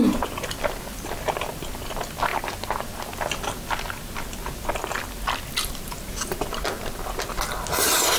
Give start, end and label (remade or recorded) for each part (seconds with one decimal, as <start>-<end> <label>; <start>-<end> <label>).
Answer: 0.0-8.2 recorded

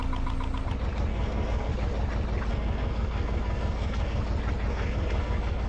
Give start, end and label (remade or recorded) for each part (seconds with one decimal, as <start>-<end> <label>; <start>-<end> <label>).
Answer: 0.0-1.1 recorded; 1.1-1.7 remade; 1.7-2.5 recorded; 2.5-4.2 remade; 4.2-4.7 recorded; 4.7-5.7 remade

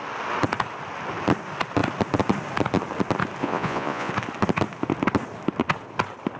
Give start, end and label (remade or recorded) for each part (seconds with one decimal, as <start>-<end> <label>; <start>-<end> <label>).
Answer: 0.0-3.4 recorded; 3.4-4.1 remade; 4.1-6.4 recorded